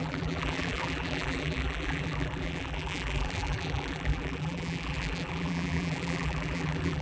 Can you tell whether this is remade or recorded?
remade